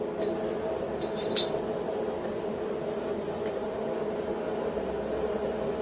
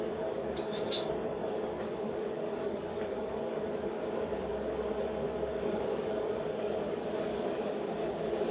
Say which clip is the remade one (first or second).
second